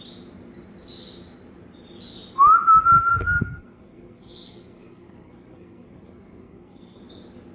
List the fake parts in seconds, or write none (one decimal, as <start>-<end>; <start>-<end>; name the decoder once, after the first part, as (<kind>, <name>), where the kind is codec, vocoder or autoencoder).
3.1-7.0 (codec, SNAC)